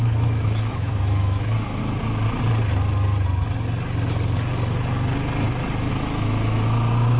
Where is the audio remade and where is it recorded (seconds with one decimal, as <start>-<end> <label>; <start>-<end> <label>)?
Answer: 0.0-1.8 remade; 1.8-5.9 recorded; 5.9-7.2 remade